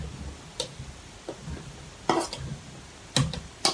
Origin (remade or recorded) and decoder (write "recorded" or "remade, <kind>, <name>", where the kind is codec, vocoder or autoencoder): recorded